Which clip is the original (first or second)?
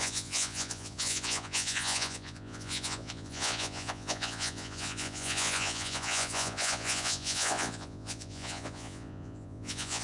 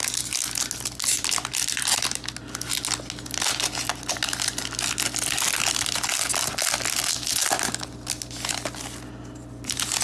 second